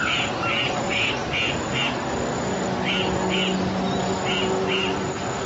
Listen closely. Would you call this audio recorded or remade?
recorded